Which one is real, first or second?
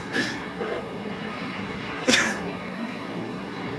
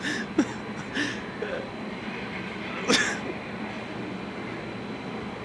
second